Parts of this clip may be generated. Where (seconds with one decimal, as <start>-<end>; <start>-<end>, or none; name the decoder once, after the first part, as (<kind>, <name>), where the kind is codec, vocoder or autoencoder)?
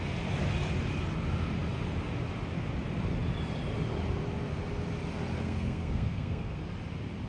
5.4-6.6 (codec, SNAC)